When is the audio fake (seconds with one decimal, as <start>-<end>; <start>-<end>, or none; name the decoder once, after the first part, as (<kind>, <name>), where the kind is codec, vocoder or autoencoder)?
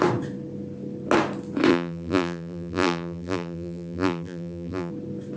1.7-4.9 (vocoder, BigVGAN v2)